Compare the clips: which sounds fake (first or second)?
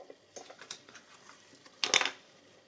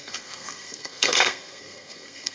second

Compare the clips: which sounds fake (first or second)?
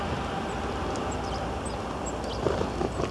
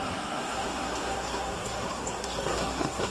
second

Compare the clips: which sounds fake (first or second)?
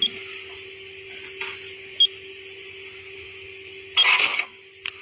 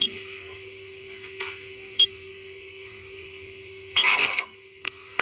second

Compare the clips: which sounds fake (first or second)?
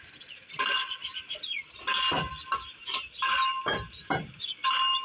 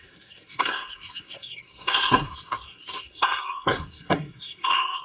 second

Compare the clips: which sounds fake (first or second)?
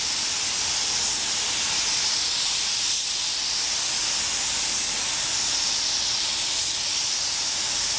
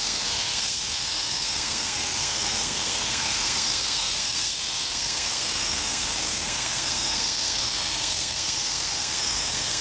second